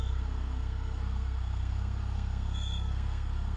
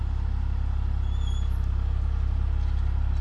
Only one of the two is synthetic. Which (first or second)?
first